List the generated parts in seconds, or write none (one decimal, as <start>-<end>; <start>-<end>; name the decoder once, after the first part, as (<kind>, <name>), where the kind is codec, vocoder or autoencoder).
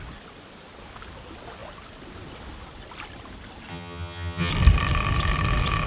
3.7-4.5 (vocoder, HiFi-GAN)